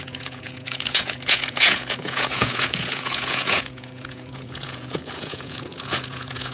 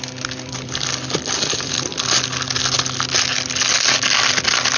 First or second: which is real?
second